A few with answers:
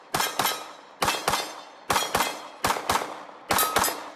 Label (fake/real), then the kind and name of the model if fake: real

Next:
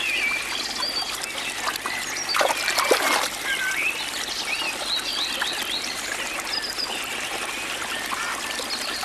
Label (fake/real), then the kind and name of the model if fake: real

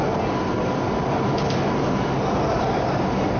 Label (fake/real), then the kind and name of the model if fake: real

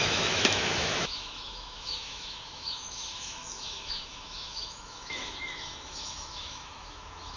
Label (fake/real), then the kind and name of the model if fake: fake, autoencoder, DAC-VAE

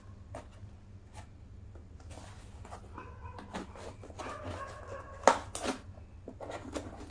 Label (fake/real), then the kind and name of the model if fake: real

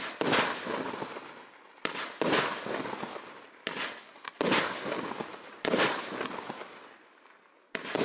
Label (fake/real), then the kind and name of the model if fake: real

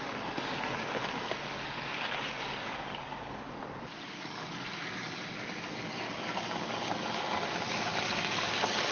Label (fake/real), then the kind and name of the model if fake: fake, codec, DAC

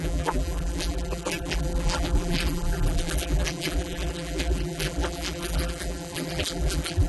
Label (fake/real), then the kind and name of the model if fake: fake, vocoder, BigVGAN v2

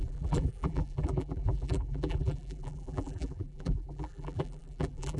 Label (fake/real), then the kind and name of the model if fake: fake, vocoder, BigVGAN v2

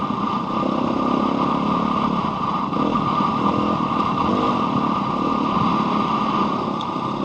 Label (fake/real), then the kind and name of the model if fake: real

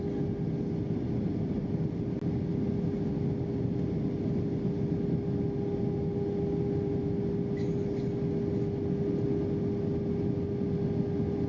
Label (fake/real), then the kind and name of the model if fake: real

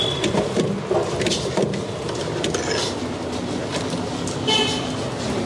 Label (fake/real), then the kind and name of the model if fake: real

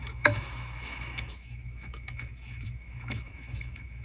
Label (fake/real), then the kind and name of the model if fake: fake, autoencoder, DAC-VAE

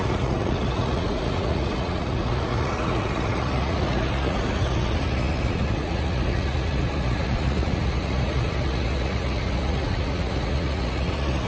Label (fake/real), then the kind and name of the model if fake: fake, vocoder, Vocos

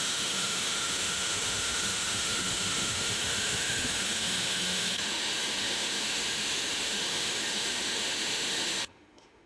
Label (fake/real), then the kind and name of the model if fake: fake, autoencoder, DAC-VAE